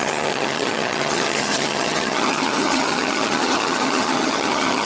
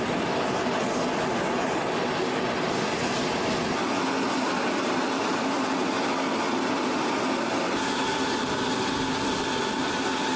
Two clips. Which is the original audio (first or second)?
second